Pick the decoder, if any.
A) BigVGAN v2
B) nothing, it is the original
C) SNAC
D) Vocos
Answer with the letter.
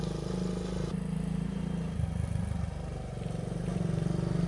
B